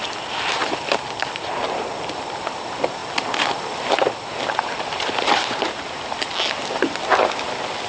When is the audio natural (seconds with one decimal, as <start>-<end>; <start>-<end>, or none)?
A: 0.0-7.9